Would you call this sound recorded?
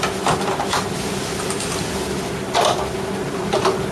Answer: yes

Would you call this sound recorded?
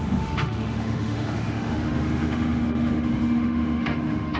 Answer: no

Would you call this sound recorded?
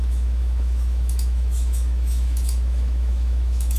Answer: no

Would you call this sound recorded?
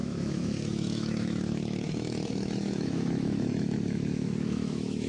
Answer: no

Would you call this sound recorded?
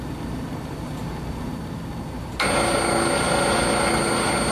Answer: yes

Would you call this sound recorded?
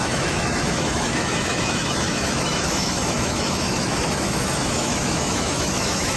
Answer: no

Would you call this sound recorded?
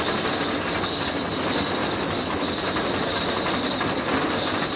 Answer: yes